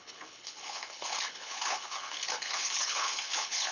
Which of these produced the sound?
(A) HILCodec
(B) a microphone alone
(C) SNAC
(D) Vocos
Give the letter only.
A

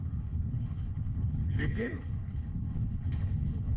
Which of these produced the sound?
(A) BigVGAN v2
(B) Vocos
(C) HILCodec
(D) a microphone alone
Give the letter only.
C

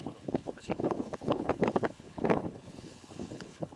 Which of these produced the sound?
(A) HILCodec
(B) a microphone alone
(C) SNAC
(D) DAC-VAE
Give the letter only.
A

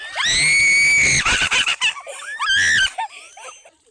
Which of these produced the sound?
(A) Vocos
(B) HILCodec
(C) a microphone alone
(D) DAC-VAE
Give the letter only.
C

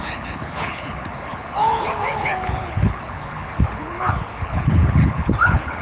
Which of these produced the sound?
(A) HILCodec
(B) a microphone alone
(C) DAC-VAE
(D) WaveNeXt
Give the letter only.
A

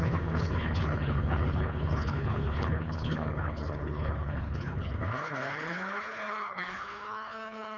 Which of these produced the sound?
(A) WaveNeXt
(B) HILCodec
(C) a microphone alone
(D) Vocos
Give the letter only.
B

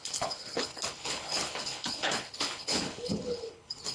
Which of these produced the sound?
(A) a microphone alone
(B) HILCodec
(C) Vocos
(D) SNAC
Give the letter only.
B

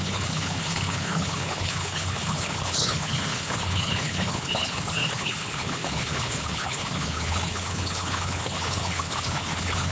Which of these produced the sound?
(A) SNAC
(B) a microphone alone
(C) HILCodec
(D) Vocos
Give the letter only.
C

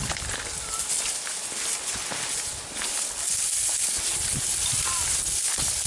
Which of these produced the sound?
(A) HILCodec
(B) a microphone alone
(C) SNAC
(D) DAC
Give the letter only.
B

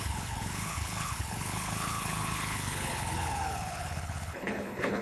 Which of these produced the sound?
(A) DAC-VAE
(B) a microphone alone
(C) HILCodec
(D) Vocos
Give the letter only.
C